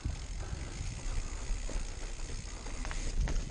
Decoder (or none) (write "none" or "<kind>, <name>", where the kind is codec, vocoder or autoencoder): none